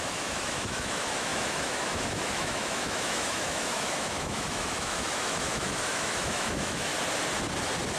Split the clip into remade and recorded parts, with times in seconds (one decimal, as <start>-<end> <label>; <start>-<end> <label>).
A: 0.0-6.9 remade; 6.9-8.0 recorded